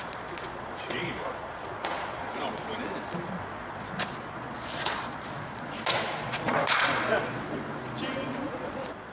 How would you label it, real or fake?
fake